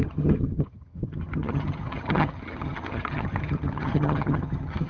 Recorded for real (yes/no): no